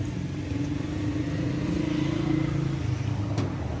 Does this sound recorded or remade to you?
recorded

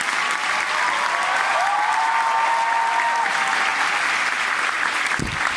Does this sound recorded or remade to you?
recorded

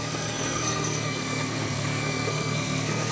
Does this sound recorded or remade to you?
remade